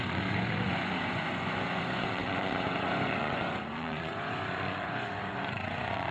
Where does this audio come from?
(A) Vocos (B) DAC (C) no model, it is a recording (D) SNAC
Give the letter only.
A